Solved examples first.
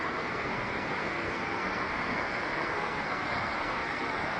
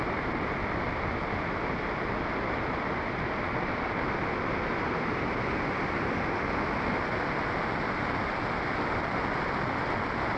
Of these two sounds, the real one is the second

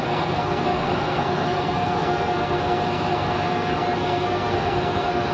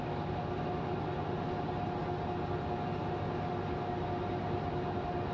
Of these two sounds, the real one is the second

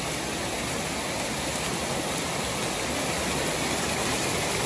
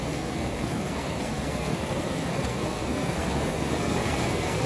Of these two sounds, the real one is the first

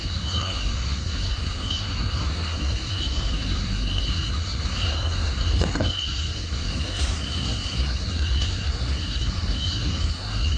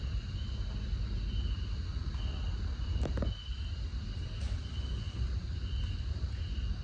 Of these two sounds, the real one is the second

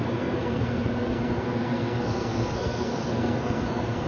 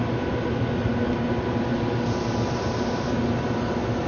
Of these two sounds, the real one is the second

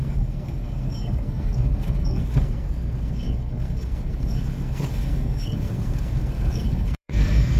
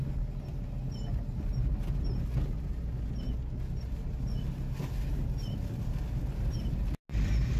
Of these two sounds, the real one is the second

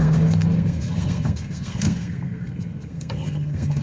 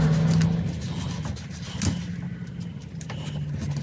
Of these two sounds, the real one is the second